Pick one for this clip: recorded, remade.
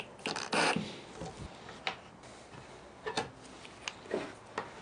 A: recorded